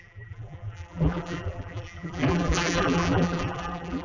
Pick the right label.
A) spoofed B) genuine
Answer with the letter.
A